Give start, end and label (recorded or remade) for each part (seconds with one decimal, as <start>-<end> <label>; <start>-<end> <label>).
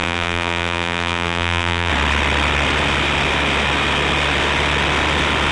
0.0-1.9 remade; 1.9-5.5 recorded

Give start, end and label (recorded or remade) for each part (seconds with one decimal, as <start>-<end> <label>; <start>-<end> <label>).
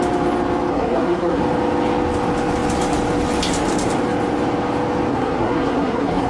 0.0-0.7 recorded; 0.7-1.4 remade; 1.4-5.1 recorded; 5.1-6.3 remade